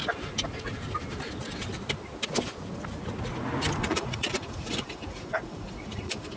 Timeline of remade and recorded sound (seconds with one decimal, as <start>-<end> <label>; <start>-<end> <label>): 0.0-3.8 recorded; 3.8-6.4 remade